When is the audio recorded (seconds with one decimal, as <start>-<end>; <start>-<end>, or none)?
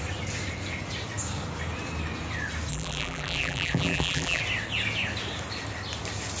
0.0-2.7; 4.4-6.4